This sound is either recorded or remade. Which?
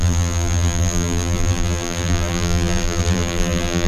remade